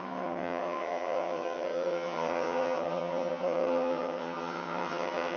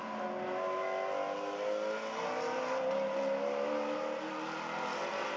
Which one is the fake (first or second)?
first